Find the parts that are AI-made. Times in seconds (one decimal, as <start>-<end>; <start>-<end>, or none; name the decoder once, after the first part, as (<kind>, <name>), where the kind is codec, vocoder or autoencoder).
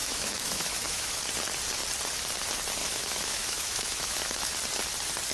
0.0-1.2 (autoencoder, DAC-VAE); 2.8-4.5